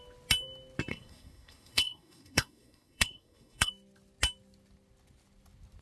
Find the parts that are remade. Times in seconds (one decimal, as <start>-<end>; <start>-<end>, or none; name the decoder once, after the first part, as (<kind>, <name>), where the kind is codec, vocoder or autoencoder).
0.9-3.7 (codec, SNAC)